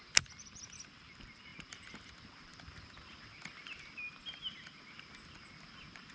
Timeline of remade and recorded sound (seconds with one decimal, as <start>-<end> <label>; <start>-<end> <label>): 0.0-6.1 recorded